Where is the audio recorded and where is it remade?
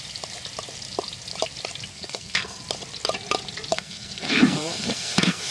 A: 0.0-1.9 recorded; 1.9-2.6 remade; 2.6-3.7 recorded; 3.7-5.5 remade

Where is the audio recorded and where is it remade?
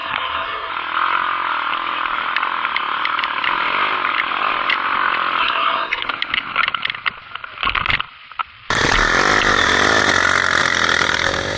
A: 0.0-0.7 remade; 0.7-5.4 recorded; 5.4-6.1 remade; 6.1-11.6 recorded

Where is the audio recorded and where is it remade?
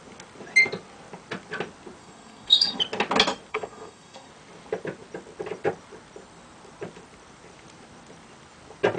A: 0.0-2.0 recorded; 2.0-2.8 remade; 2.8-3.5 recorded; 3.5-4.3 remade; 4.3-9.0 recorded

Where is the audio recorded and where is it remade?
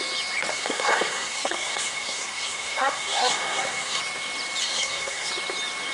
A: 0.0-0.5 recorded; 0.5-4.0 remade; 4.0-4.6 recorded; 4.6-5.3 remade; 5.3-5.9 recorded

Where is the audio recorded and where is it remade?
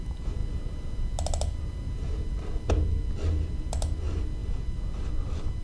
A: 0.0-5.6 recorded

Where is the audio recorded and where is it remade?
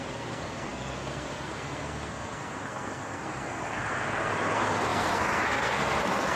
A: 0.0-6.4 remade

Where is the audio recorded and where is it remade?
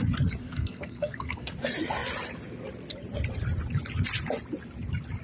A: 0.0-0.4 recorded; 0.4-1.5 remade; 1.5-5.2 recorded